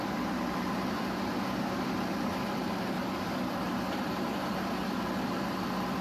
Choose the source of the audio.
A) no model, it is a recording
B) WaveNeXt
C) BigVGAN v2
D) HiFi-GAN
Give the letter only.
C